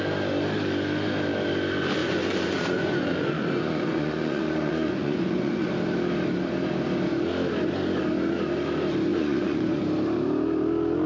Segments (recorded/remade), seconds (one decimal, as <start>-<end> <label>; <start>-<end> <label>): 0.0-2.0 recorded; 2.0-5.7 remade; 5.7-9.1 recorded; 9.1-9.8 remade; 9.8-11.1 recorded